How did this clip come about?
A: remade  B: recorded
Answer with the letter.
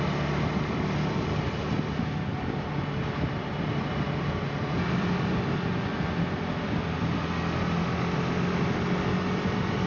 B